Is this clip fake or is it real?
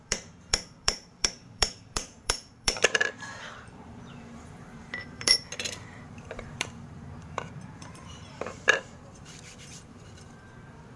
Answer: fake